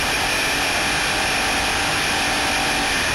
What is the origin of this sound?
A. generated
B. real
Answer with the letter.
B